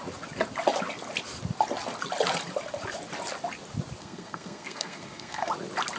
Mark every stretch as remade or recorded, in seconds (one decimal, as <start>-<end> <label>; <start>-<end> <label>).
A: 0.0-4.0 recorded; 4.0-5.5 remade; 5.5-6.0 recorded